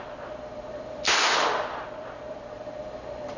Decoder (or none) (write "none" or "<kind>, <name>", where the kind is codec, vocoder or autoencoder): none